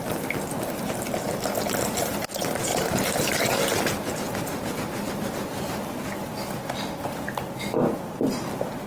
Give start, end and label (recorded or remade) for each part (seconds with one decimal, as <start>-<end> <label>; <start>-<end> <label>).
0.0-2.7 recorded; 2.7-3.4 remade; 3.4-8.9 recorded